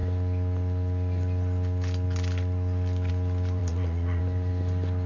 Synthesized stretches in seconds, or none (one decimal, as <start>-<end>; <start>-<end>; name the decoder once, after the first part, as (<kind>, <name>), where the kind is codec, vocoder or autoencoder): 3.6-4.2 (vocoder, Vocos)